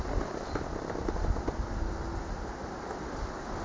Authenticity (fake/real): real